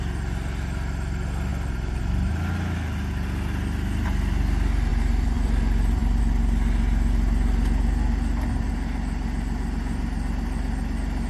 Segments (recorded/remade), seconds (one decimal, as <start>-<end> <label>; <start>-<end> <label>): 0.0-4.9 recorded; 4.9-6.2 remade; 6.2-11.3 recorded